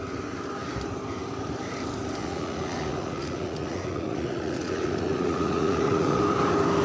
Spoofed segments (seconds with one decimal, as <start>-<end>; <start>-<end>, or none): 2.2-6.2